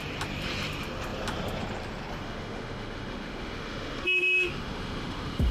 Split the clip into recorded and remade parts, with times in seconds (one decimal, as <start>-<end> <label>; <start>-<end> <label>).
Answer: 0.0-2.2 recorded; 2.2-5.5 remade